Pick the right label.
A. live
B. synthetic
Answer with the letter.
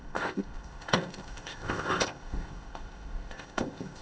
B